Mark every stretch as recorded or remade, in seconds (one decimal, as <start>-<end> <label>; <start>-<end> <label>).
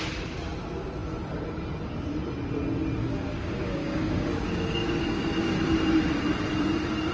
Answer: 0.0-3.0 recorded; 3.0-5.6 remade; 5.6-7.1 recorded